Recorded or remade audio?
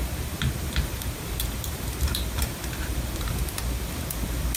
remade